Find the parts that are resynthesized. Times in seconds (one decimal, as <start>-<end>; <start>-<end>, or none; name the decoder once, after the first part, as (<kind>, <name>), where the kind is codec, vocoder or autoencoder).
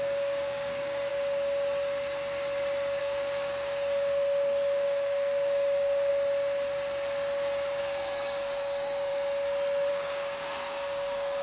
0.0-1.1 (codec, DAC); 3.0-6.1; 7.8-9.1; 9.9-11.4